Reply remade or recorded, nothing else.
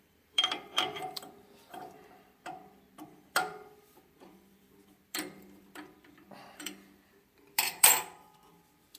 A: remade